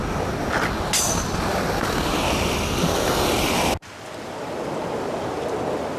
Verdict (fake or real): real